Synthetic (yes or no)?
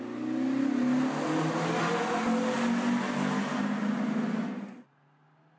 no